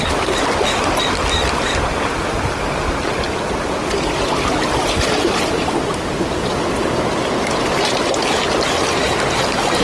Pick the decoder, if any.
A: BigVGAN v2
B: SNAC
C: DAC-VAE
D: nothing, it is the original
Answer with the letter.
D